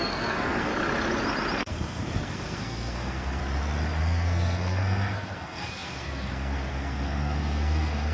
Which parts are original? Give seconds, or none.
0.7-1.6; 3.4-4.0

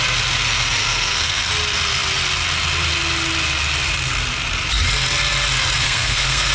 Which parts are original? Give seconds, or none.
0.0-0.8; 1.5-5.8

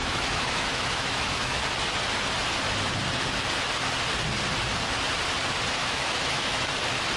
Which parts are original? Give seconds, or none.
1.6-5.8; 6.7-7.2